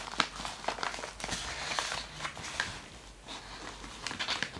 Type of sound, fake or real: real